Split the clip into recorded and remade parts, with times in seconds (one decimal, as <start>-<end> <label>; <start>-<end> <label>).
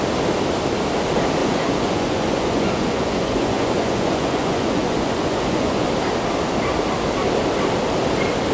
0.0-1.4 recorded; 1.4-5.9 remade; 5.9-8.5 recorded